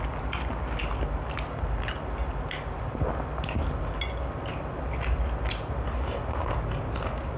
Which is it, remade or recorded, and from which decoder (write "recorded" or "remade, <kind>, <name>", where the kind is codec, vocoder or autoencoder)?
recorded